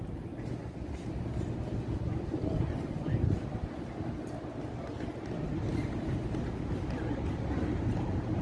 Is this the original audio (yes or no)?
yes